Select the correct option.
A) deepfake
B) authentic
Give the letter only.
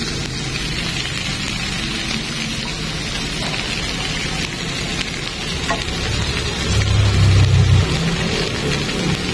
B